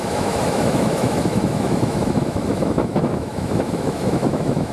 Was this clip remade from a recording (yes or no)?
yes